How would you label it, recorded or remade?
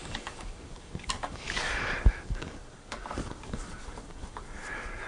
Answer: remade